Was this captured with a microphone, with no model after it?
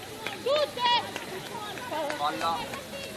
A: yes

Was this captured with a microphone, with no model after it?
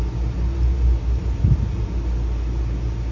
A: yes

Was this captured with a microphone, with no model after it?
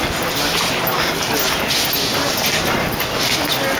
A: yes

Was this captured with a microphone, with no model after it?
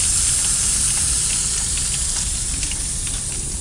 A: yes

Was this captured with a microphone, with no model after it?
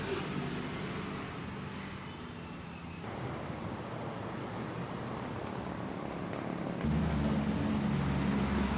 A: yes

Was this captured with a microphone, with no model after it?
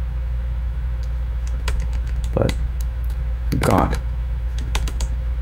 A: no